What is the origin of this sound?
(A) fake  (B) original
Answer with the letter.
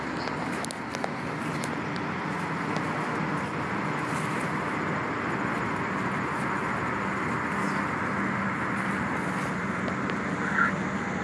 B